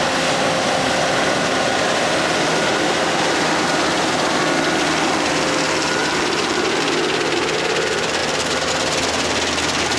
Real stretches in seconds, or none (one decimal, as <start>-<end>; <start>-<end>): 0.0-6.0; 6.6-8.2; 8.7-10.0